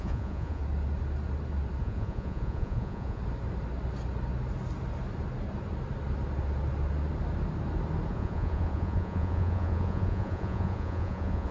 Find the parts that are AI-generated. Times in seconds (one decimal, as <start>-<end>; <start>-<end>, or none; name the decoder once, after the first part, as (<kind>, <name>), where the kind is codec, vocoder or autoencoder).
0.0-0.6 (vocoder, Vocos); 1.8-3.2; 8.1-11.5